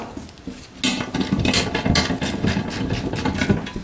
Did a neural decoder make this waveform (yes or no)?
no